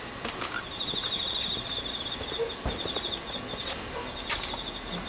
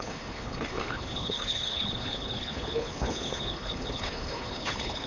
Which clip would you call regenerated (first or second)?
second